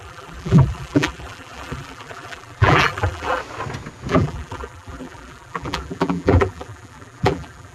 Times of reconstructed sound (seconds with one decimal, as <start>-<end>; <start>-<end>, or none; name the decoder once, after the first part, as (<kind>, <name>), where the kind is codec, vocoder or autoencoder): 0.0-3.4 (vocoder, BigVGAN v2); 4.1-7.7